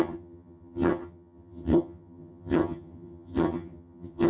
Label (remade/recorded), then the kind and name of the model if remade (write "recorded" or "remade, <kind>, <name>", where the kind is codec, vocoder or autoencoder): remade, vocoder, HiFi-GAN